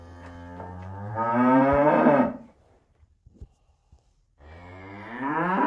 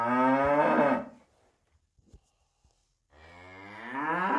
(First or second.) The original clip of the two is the second